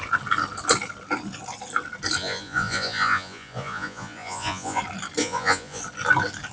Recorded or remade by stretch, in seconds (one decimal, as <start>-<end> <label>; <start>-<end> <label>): 0.0-2.2 recorded; 2.2-4.8 remade; 4.8-5.2 recorded; 5.2-5.8 remade; 5.8-6.5 recorded